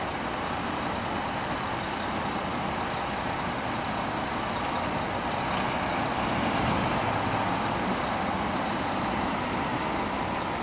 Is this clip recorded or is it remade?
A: recorded